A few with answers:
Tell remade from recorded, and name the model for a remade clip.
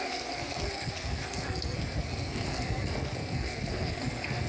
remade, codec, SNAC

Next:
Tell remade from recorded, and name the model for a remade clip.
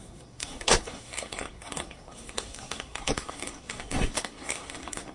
remade, codec, SNAC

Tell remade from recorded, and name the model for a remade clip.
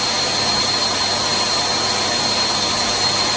recorded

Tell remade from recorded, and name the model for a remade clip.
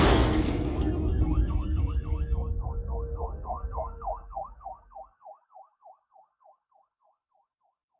remade, codec, SNAC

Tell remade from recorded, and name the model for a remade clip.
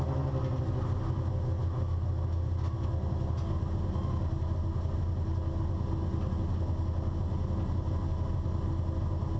recorded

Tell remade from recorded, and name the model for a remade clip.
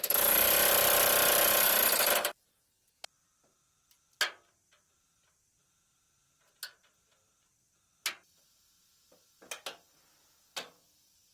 recorded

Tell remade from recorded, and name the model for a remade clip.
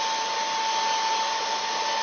recorded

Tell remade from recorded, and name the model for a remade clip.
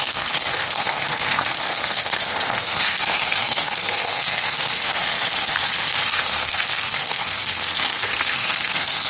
remade, codec, SNAC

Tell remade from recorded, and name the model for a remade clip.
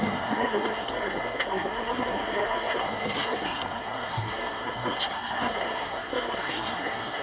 remade, codec, SNAC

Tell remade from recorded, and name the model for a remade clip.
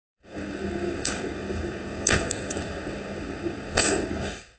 remade, codec, SNAC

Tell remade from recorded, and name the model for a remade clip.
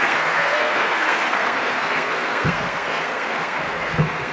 remade, codec, SNAC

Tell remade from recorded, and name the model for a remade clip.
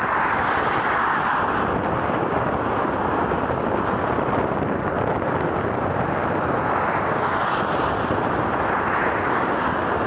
recorded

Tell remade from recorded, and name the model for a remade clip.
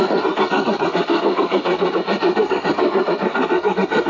remade, codec, SNAC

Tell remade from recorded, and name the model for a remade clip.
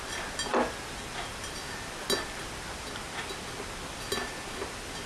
recorded